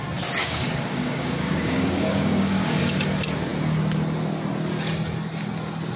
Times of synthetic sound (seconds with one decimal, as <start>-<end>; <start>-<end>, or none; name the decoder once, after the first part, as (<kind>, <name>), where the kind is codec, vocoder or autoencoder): 0.4-2.8 (codec, DAC)